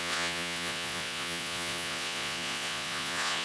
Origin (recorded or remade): remade